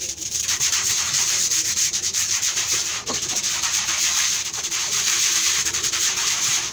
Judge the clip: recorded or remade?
remade